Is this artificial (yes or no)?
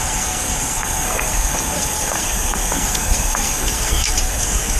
yes